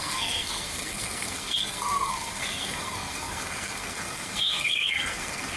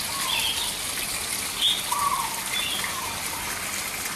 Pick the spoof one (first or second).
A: first